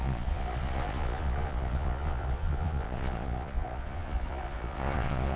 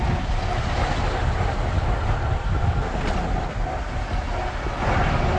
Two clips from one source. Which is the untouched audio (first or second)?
second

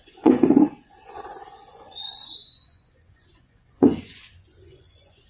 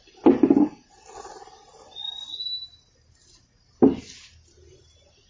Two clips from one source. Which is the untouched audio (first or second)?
second